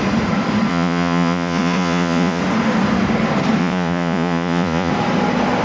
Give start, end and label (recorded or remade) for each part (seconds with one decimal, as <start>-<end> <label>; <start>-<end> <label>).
0.0-0.7 recorded; 0.7-2.4 remade; 2.4-3.6 recorded; 3.6-4.9 remade; 4.9-5.6 recorded